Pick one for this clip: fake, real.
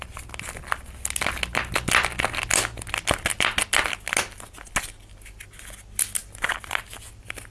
real